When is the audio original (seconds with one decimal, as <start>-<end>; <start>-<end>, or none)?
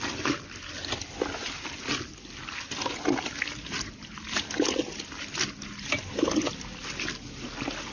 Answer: 0.0-7.9